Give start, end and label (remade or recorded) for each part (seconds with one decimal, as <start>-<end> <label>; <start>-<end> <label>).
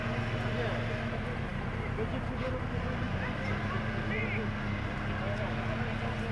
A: 0.0-6.3 recorded